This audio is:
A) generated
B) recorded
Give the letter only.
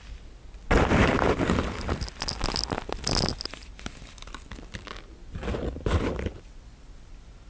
B